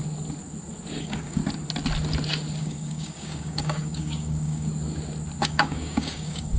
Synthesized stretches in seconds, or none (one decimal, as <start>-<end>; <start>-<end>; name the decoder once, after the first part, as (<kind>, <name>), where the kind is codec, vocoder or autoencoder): 1.0-1.4 (codec, DAC); 2.6-4.7; 5.4-6.6